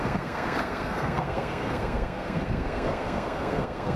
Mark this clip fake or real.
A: fake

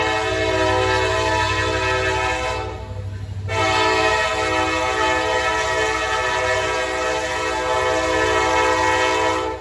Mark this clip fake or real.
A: real